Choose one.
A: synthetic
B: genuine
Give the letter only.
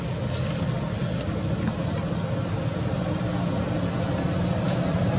B